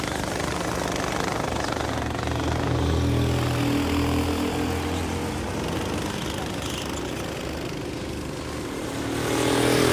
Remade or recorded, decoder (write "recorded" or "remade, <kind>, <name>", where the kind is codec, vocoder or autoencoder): recorded